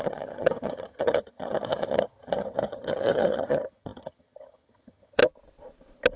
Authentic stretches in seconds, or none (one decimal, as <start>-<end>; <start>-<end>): 5.2-6.2